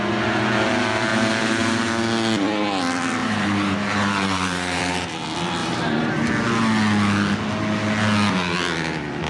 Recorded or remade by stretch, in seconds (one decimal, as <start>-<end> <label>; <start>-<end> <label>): 0.0-3.2 recorded; 3.2-5.1 remade; 5.1-5.6 recorded; 5.6-6.3 remade; 6.3-9.3 recorded